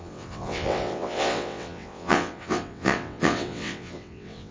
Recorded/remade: remade